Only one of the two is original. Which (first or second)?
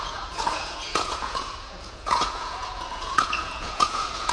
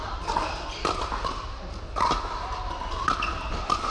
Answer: second